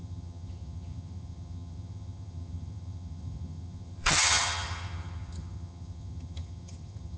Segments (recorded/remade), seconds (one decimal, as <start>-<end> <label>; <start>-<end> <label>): 0.0-7.2 remade